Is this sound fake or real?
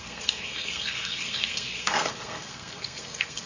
fake